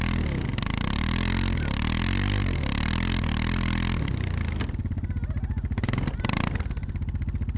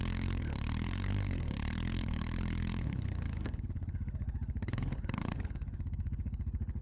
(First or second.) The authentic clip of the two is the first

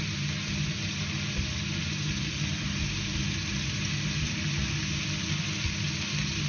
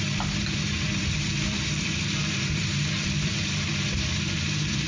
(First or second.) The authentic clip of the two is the first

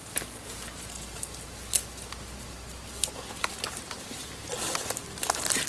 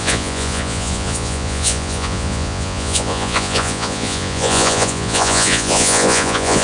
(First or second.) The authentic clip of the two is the first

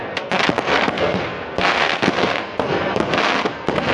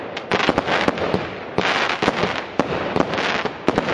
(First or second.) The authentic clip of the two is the second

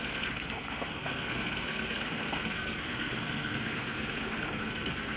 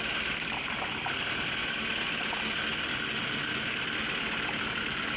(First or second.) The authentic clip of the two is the second